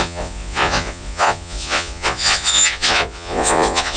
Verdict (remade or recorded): remade